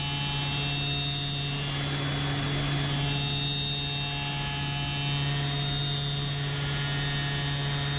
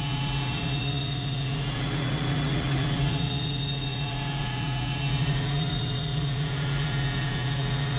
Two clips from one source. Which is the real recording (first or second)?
first